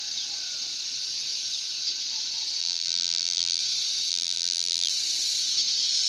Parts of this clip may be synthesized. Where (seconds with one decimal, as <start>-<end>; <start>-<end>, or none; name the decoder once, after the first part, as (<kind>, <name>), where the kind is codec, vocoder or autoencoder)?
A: 2.6-3.6 (vocoder, BigVGAN v2); 4.1-4.9